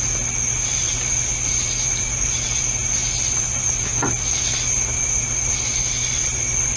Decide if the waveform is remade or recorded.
recorded